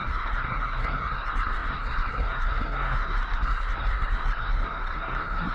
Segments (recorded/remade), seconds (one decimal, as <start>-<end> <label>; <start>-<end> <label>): 0.0-5.5 remade